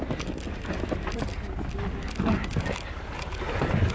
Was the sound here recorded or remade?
recorded